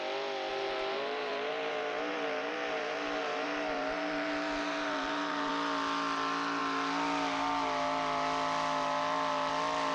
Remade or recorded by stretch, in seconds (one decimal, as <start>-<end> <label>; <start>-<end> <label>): 0.0-0.5 recorded; 0.5-5.5 remade; 5.5-9.9 recorded